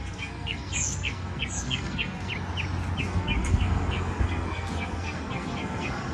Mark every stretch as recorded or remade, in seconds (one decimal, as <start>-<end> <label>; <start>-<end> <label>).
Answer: 0.0-2.3 remade; 2.3-3.0 recorded; 3.0-6.1 remade